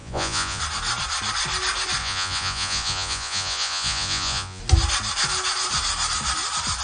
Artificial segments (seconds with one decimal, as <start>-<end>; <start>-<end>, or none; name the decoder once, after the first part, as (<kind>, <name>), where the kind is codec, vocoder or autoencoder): 0.0-0.6 (vocoder, Vocos); 2.0-4.6